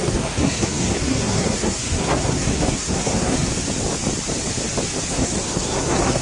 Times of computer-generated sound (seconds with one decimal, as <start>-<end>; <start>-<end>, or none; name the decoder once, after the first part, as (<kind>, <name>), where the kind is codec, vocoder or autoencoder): 0.0-3.5 (codec, SNAC); 5.1-6.2